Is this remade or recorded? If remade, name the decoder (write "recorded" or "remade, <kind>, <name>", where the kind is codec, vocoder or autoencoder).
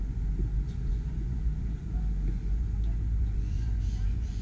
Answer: remade, vocoder, Vocos